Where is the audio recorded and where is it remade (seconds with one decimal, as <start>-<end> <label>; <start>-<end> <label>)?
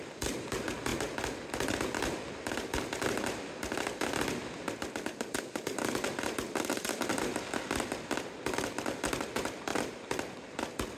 0.0-11.0 recorded